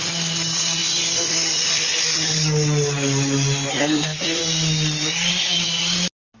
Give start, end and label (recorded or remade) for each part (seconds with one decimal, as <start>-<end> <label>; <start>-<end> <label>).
0.0-3.7 recorded; 3.7-4.4 remade; 4.4-6.4 recorded